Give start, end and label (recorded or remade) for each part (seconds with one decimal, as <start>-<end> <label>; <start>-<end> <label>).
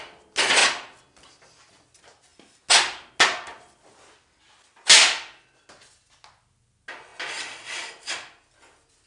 0.0-9.1 recorded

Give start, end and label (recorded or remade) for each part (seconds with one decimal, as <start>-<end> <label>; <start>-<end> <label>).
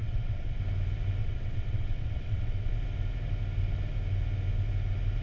0.0-0.6 remade; 0.6-1.2 recorded; 1.2-2.7 remade; 2.7-5.2 recorded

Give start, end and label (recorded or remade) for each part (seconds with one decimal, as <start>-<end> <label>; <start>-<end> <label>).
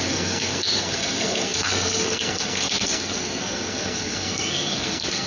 0.0-5.3 remade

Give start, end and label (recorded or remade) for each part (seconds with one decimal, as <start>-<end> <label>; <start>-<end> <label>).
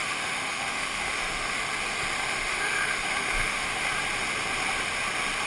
0.0-1.6 remade; 1.6-2.2 recorded; 2.2-4.0 remade; 4.0-5.5 recorded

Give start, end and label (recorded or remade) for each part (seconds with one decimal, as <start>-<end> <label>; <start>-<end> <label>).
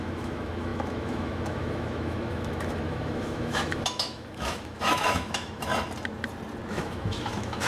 0.0-5.7 remade; 5.7-6.7 recorded; 6.7-7.7 remade